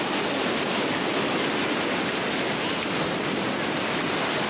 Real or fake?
real